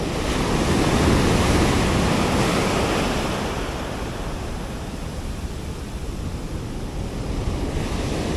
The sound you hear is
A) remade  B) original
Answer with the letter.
B